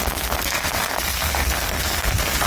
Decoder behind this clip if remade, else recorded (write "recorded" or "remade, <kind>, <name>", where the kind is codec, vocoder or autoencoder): remade, codec, SNAC